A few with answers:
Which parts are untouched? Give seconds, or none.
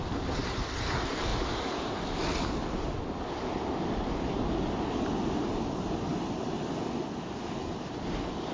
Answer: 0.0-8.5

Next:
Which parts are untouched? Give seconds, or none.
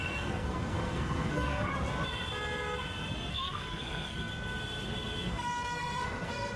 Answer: 1.7-3.3; 4.3-5.3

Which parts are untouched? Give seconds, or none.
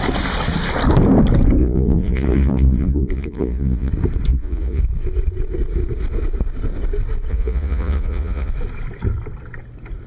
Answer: 0.0-1.6; 3.9-4.3; 4.8-7.3; 8.5-10.1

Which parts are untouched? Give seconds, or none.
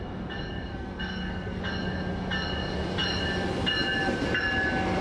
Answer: 0.0-0.7; 1.6-5.0